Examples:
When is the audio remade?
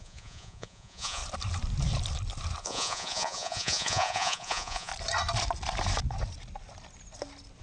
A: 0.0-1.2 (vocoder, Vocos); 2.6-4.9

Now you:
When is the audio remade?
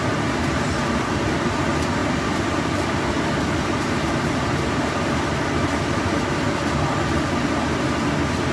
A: 0.0-0.8 (vocoder, BigVGAN v2); 2.0-5.4